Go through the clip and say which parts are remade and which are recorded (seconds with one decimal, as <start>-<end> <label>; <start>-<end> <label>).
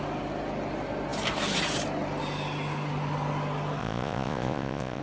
0.0-3.8 recorded; 3.8-5.0 remade